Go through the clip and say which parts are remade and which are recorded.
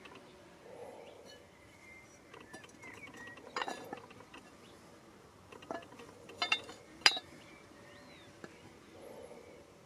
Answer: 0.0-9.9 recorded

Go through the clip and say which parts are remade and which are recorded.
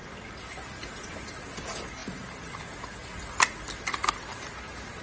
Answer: 0.0-1.6 remade; 1.6-5.0 recorded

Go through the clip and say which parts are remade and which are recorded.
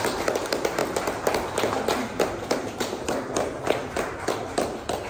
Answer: 0.0-5.1 recorded